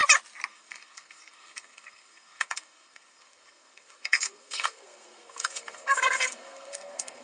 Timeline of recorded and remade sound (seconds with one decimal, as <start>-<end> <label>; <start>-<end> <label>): 0.0-0.5 recorded; 0.5-7.2 remade